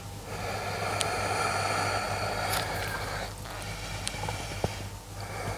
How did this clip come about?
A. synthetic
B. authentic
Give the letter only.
B